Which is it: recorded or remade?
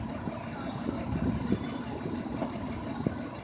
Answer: recorded